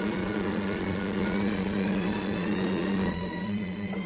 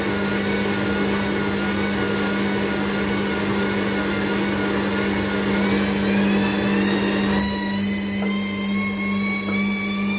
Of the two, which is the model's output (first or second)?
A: first